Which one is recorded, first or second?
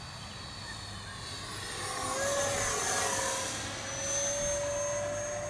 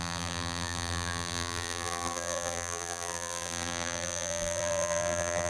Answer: first